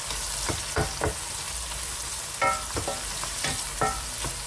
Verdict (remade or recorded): recorded